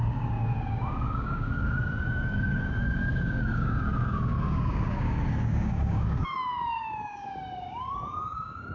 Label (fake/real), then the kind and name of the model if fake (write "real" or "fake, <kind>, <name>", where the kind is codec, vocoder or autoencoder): fake, codec, DAC